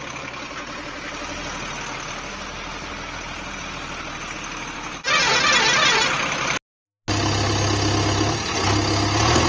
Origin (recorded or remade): recorded